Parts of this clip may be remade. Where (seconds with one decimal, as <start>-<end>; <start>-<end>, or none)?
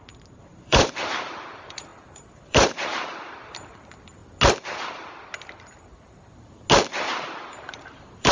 0.0-4.2; 7.5-8.3